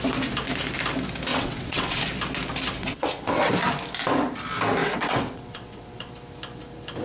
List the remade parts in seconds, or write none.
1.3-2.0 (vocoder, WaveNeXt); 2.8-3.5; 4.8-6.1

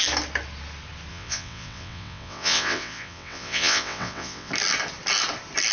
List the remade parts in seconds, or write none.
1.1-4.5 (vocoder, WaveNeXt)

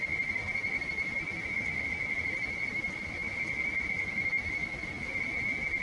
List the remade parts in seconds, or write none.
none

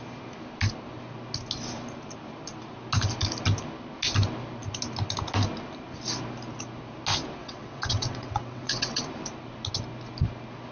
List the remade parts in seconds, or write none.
7.4-9.0 (vocoder, WaveNeXt)

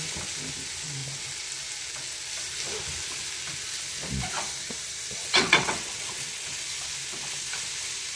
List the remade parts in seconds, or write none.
5.2-6.5 (vocoder, WaveNeXt)